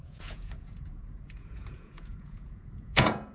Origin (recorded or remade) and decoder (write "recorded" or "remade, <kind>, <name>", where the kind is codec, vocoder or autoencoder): remade, vocoder, Vocos